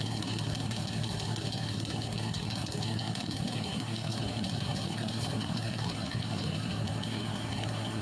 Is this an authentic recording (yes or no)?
no